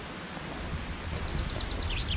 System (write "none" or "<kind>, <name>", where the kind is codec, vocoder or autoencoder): none